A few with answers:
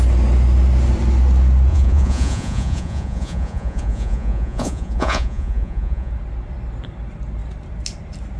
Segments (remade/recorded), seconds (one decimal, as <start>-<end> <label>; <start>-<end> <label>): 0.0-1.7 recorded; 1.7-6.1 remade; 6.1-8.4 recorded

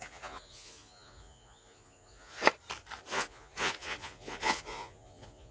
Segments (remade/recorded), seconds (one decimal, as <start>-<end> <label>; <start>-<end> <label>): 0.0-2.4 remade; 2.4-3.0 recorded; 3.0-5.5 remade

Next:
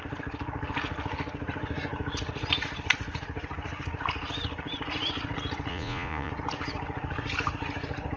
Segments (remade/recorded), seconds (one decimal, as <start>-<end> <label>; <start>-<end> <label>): 0.0-5.7 recorded; 5.7-6.3 remade; 6.3-8.2 recorded

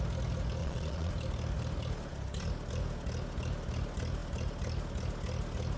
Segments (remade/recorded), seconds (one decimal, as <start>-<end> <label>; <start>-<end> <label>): 0.0-0.6 recorded; 0.6-1.1 remade; 1.1-5.8 recorded